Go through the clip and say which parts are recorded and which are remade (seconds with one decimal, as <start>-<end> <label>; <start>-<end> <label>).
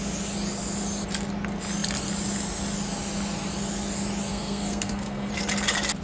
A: 0.0-4.3 recorded; 4.3-5.3 remade; 5.3-6.0 recorded